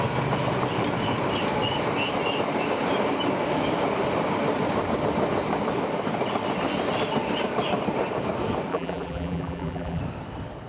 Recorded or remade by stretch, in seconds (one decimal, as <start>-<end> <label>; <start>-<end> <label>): 0.0-8.7 recorded; 8.7-10.0 remade; 10.0-10.7 recorded